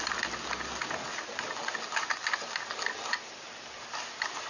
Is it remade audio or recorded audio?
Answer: recorded